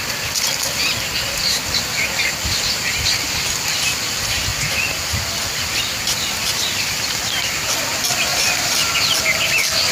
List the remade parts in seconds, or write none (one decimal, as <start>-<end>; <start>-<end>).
6.5-7.7; 8.3-8.9